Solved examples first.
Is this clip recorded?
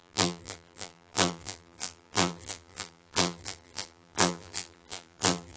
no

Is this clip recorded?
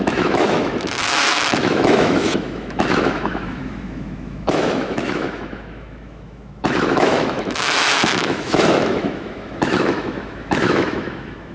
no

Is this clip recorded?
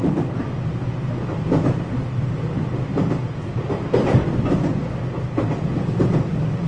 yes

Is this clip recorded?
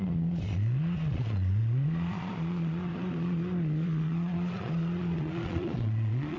no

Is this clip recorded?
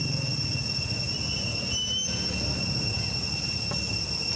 yes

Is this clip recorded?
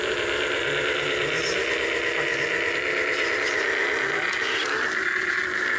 yes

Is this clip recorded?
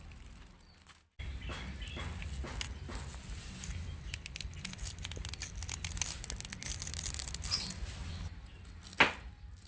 yes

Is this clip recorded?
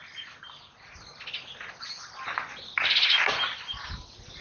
yes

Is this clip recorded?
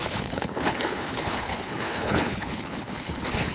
no